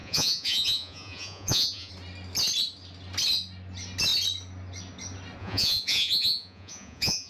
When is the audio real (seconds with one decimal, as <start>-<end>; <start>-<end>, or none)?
1.9-5.4